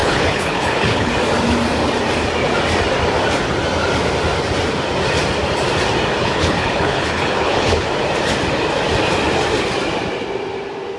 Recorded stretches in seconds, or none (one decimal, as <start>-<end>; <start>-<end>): 1.1-6.2; 7.9-11.0